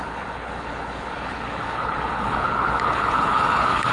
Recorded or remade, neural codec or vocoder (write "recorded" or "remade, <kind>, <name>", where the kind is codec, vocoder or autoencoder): remade, codec, HILCodec